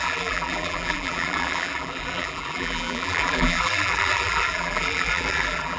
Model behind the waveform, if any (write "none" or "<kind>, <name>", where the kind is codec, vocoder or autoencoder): vocoder, BigVGAN v2